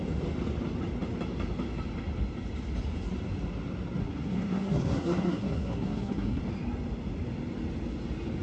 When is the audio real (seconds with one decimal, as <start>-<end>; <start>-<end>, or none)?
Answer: 0.0-4.0; 6.4-8.4